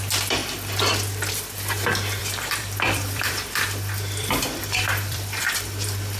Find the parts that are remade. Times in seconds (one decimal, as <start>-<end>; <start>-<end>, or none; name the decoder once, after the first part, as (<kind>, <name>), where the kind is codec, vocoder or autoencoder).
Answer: 2.2-6.2 (vocoder, BigVGAN v2)